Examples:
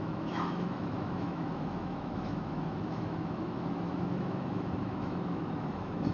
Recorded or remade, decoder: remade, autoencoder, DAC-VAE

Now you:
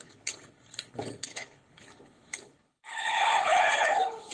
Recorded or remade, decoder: remade, codec, HILCodec